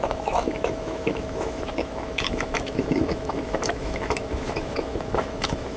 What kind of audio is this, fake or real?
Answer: fake